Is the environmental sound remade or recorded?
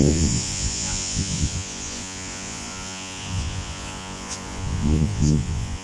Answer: remade